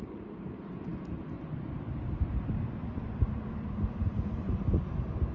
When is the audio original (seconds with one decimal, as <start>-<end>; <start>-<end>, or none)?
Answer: 0.0-5.3